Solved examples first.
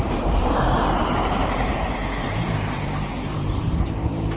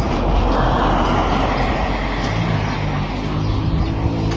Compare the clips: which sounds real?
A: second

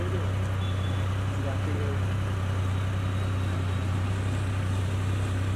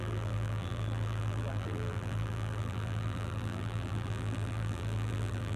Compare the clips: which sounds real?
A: first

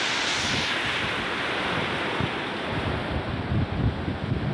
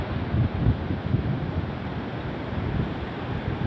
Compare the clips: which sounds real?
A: second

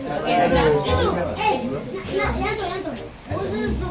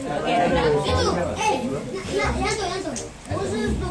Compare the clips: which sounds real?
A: first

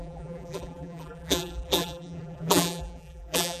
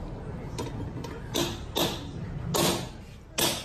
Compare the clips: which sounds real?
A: second